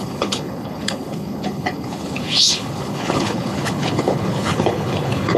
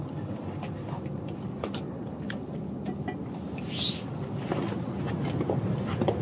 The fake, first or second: first